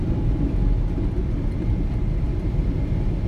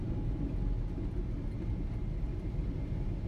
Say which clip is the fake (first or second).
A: first